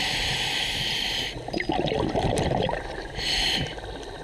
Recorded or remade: recorded